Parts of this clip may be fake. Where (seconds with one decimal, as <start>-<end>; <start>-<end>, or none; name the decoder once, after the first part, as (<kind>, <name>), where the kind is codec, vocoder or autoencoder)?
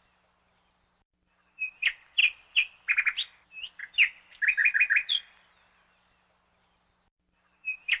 none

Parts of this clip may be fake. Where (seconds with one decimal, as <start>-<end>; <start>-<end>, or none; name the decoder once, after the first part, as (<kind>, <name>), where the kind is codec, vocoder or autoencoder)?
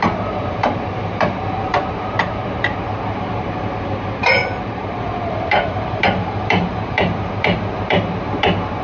0.0-8.8 (vocoder, BigVGAN v2)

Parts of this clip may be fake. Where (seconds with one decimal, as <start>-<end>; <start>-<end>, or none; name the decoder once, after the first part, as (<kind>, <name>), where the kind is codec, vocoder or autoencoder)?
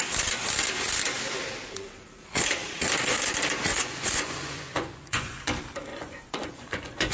3.7-5.5 (vocoder, Vocos); 5.9-7.1